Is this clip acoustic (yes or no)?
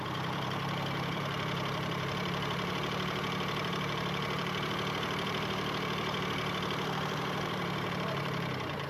no